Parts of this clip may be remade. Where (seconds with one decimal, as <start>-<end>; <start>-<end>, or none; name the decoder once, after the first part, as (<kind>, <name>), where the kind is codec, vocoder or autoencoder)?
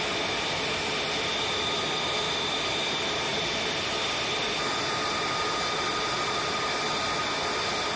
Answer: none